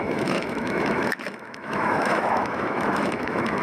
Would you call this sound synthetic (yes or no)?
yes